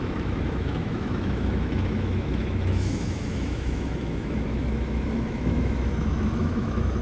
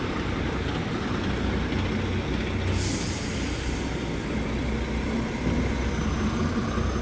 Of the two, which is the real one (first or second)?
second